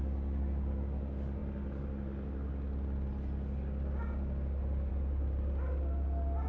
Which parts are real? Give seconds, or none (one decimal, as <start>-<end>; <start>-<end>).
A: 0.0-6.5